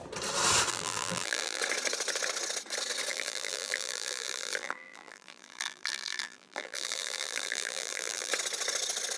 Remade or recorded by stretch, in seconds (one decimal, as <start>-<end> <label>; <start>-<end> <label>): 0.0-0.7 recorded; 0.7-1.6 remade; 1.6-3.1 recorded; 3.1-8.3 remade; 8.3-9.2 recorded